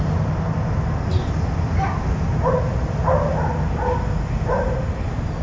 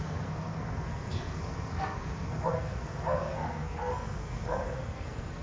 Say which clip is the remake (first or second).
second